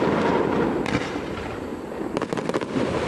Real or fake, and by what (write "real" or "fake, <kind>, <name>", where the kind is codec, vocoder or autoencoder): real